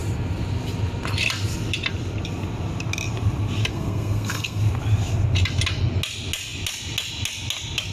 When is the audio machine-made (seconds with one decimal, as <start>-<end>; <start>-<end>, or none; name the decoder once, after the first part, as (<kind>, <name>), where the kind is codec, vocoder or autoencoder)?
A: 3.7-4.6 (codec, SNAC)